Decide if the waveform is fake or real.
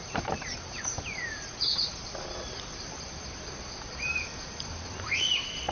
fake